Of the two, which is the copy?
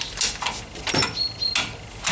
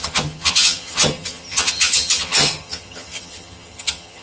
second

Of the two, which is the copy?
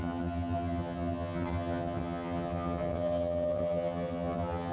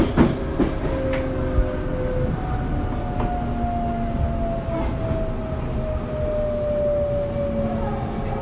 first